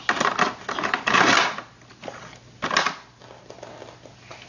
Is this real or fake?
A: real